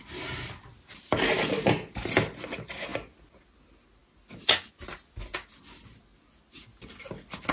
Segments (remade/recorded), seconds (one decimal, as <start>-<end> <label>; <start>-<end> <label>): 0.0-7.5 recorded